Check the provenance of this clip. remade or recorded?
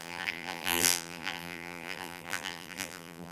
remade